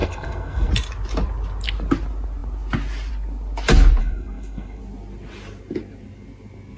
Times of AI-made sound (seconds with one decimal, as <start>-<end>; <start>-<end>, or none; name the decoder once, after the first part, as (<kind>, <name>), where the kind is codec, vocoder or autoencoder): 0.0-0.7 (codec, SNAC); 4.0-4.8